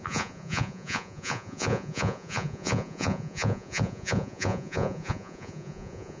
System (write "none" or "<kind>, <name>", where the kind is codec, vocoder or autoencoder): vocoder, Vocos